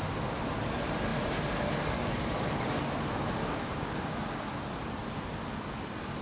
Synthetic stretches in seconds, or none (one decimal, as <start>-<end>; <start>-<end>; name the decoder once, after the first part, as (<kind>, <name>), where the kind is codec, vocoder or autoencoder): 3.4-4.1 (codec, DAC)